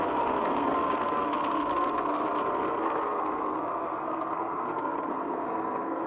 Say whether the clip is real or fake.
fake